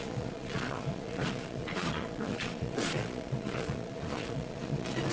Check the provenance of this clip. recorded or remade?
remade